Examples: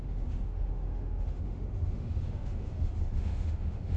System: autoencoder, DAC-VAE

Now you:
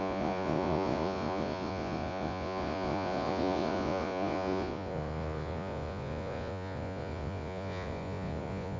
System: vocoder, Vocos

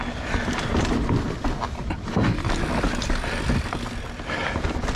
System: none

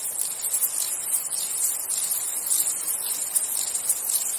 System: none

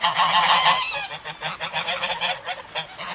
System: none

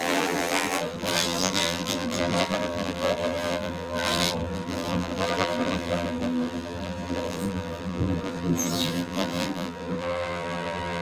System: vocoder, BigVGAN v2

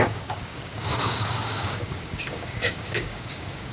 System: codec, DAC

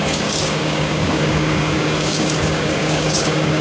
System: codec, DAC